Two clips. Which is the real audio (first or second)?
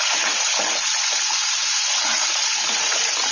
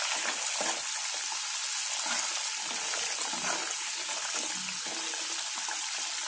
second